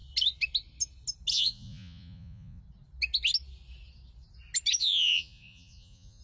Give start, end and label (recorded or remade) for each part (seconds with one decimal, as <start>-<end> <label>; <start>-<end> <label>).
0.0-1.3 recorded; 1.3-2.6 remade; 2.6-4.8 recorded; 4.8-6.2 remade